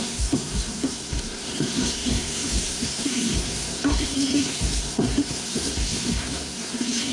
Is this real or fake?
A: fake